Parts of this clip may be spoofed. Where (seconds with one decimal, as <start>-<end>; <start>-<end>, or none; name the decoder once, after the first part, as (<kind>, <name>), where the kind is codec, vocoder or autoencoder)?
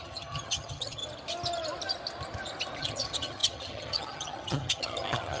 0.0-1.0 (vocoder, HiFi-GAN); 2.8-5.4